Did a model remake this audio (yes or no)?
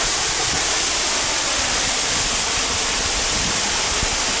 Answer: no